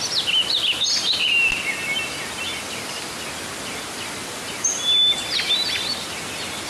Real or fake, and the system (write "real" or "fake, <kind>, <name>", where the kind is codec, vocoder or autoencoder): real